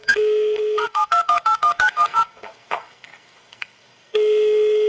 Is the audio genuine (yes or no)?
no